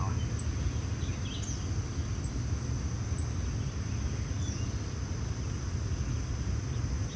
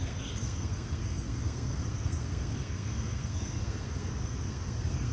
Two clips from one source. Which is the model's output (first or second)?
second